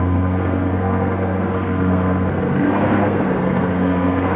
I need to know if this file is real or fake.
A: fake